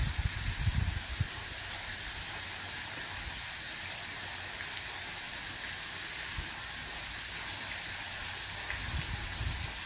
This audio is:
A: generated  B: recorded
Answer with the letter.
B